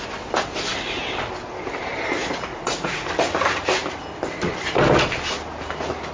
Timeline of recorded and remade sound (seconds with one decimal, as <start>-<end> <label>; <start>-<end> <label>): 0.0-2.5 recorded; 2.5-3.1 remade; 3.1-6.1 recorded